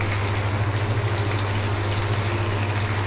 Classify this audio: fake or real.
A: real